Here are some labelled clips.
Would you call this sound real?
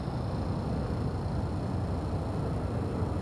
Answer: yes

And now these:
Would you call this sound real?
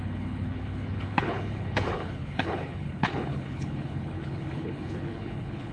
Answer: no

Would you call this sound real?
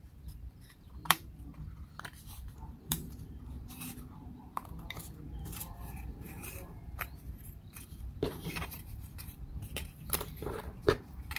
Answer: no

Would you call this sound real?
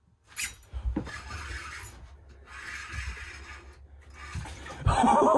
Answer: yes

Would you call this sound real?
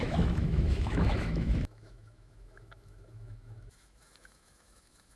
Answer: no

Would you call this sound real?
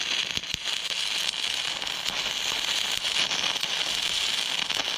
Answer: yes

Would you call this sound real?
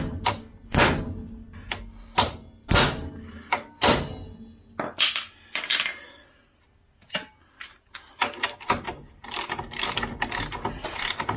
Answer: yes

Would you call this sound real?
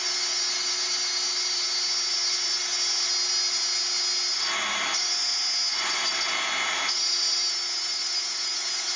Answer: yes